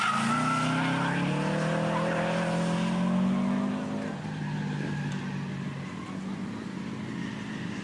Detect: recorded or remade recorded